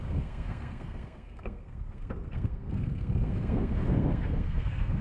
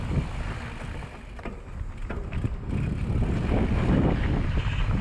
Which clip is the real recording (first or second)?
second